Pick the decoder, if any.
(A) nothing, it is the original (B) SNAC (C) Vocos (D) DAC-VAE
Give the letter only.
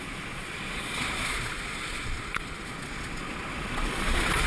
C